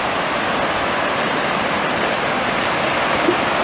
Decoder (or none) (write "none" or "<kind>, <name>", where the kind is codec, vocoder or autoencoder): vocoder, BigVGAN v2